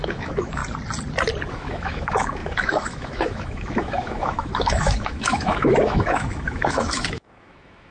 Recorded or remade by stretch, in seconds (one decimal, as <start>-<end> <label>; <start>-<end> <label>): 0.0-0.6 remade; 0.6-1.5 recorded; 1.5-7.9 remade